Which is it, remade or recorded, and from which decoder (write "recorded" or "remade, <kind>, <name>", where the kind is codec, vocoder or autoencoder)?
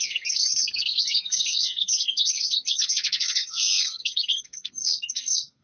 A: remade, codec, SNAC